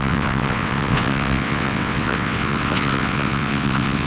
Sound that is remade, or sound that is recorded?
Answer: remade